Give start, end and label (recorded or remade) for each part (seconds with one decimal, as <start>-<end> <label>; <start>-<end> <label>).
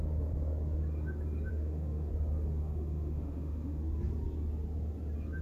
0.0-1.5 recorded; 1.5-2.1 remade; 2.1-2.6 recorded; 2.6-3.8 remade; 3.8-5.4 recorded